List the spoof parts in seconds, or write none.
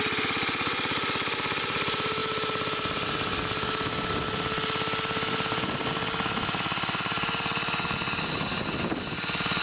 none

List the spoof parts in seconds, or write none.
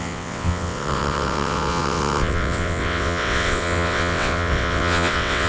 0.0-5.5 (vocoder, WaveNeXt)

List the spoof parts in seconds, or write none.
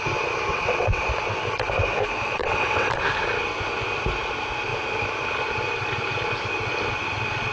0.5-1.0 (vocoder, WaveNeXt); 2.4-2.9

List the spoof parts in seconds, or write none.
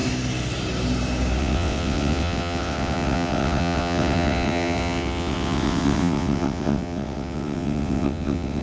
1.4-8.6 (vocoder, WaveNeXt)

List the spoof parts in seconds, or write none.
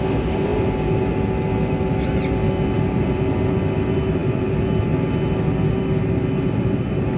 none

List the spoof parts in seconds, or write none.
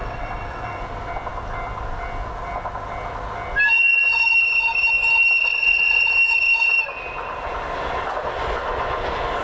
0.0-0.8 (vocoder, WaveNeXt); 5.4-6.1